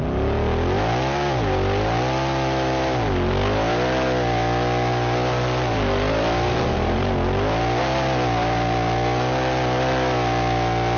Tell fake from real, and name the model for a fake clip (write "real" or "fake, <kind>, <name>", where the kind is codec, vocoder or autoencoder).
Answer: real